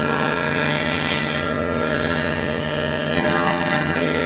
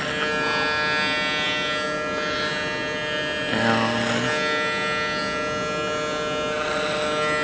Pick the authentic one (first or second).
second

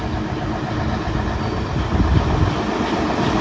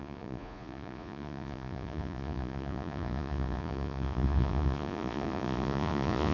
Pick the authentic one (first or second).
first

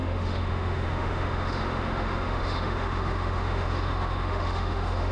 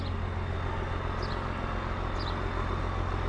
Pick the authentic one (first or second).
second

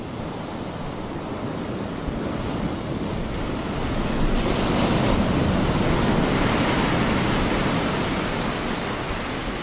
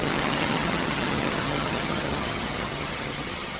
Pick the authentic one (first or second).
first